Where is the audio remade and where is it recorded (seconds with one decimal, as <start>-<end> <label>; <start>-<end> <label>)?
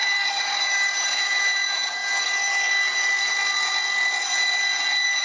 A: 0.0-2.0 remade; 2.0-5.2 recorded